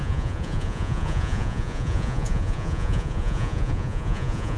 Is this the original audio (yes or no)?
no